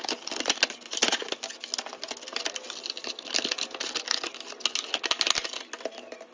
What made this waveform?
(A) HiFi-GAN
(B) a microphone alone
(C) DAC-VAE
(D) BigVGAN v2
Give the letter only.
B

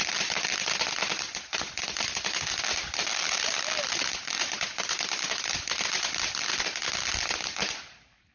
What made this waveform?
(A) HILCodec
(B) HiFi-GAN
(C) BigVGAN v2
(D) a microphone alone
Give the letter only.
D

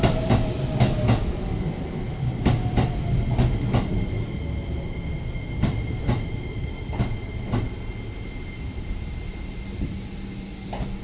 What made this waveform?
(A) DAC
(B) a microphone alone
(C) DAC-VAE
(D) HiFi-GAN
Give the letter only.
B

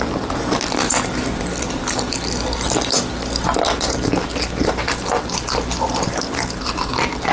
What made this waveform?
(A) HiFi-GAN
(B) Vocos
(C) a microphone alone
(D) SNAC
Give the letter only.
C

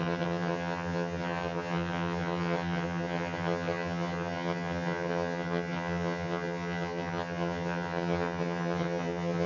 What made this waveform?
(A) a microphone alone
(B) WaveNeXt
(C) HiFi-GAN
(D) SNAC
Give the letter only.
C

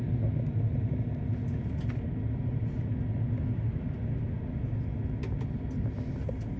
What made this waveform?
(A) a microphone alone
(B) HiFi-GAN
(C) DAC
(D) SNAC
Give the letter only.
A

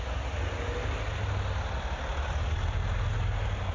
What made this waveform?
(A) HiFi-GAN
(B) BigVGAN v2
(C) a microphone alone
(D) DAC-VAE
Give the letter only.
C